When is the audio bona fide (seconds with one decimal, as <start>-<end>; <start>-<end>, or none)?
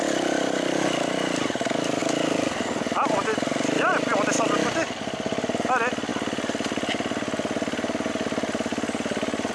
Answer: 0.0-9.5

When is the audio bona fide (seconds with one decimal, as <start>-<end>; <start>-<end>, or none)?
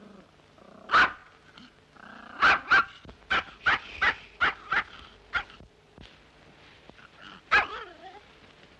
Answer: 0.0-8.8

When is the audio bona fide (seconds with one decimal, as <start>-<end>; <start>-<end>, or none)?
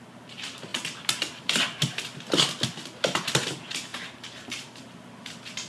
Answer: 0.0-5.7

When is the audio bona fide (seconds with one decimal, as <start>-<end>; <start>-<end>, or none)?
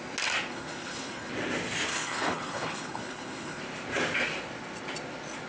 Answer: 0.0-0.5; 1.3-1.9; 3.6-5.5